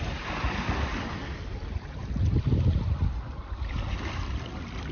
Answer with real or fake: real